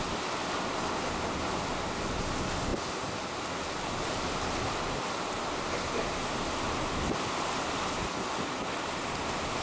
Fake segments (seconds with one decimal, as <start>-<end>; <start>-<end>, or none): none